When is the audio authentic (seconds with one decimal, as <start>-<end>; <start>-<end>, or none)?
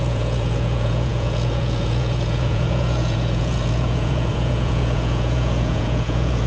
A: none